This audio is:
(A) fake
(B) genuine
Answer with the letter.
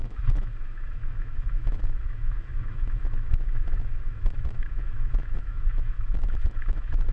A